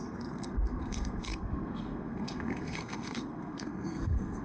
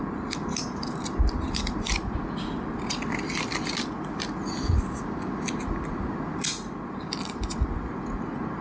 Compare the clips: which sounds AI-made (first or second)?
first